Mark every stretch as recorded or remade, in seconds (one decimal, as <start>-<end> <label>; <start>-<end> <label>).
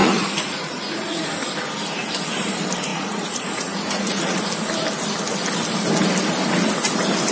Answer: 0.0-1.2 remade; 1.2-2.9 recorded; 2.9-4.4 remade; 4.4-7.3 recorded